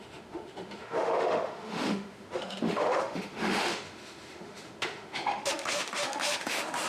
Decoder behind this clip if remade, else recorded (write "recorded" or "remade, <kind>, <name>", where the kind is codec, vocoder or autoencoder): remade, autoencoder, DAC-VAE